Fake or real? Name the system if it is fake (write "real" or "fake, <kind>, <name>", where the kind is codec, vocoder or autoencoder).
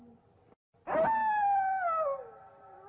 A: real